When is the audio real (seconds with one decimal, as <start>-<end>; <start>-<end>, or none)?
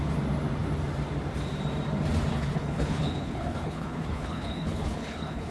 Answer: 0.0-2.3